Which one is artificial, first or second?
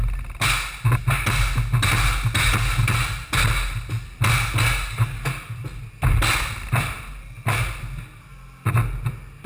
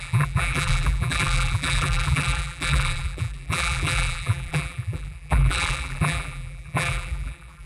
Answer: second